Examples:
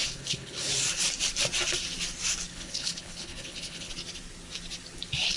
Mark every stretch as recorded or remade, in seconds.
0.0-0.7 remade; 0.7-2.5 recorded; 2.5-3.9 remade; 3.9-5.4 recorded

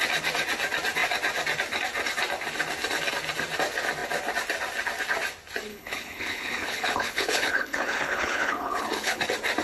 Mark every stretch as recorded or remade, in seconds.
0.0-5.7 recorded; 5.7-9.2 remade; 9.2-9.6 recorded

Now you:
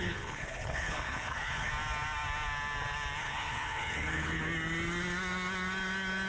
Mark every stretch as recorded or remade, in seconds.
0.0-1.7 remade; 1.7-3.2 recorded; 3.2-4.4 remade; 4.4-6.3 recorded

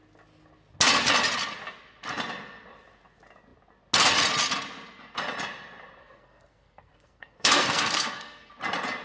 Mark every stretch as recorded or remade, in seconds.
0.0-6.0 recorded; 6.0-8.5 remade; 8.5-9.0 recorded

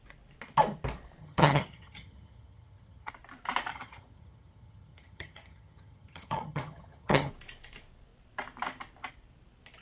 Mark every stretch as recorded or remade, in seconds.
0.0-1.2 recorded; 1.2-3.1 remade; 3.1-3.7 recorded; 3.7-7.3 remade; 7.3-9.8 recorded

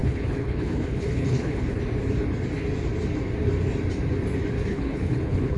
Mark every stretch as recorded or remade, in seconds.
0.0-1.8 remade; 1.8-4.7 recorded; 4.7-5.6 remade

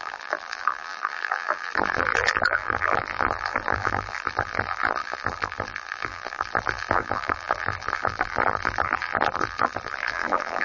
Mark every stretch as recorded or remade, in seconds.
0.0-10.6 remade

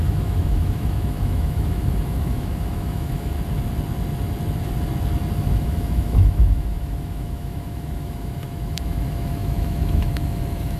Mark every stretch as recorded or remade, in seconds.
0.0-3.3 remade; 3.3-5.6 recorded; 5.6-10.8 remade